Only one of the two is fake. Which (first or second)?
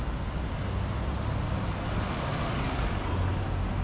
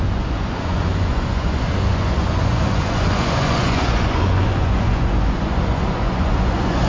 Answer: second